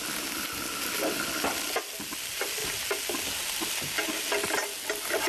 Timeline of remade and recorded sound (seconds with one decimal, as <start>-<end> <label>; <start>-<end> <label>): 0.0-5.3 recorded

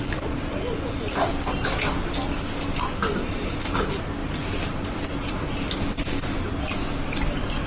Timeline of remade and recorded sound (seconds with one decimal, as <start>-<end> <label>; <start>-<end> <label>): 0.0-7.7 recorded

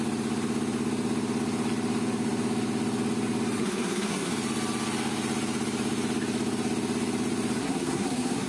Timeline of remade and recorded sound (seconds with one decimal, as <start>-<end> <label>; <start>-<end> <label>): 0.0-3.6 recorded; 3.6-4.3 remade; 4.3-7.6 recorded; 7.6-8.5 remade